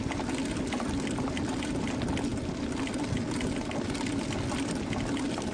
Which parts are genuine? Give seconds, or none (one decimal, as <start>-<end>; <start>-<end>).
0.0-5.5